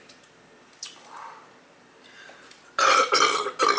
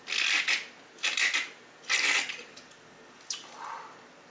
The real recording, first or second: second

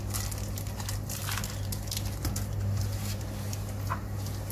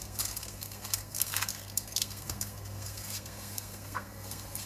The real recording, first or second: first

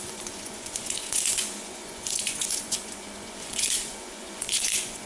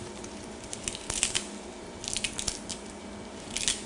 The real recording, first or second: second